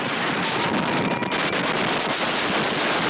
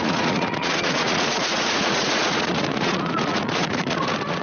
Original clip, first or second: first